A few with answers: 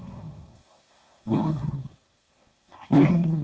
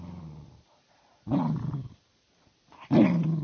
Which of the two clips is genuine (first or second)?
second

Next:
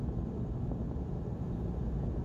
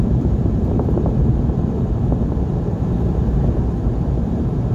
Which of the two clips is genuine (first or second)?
first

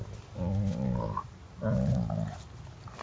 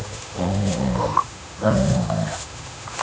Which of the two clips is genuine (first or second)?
first